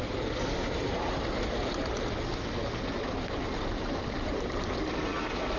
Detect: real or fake real